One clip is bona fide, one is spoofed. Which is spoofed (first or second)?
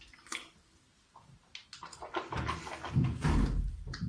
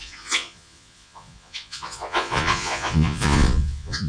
second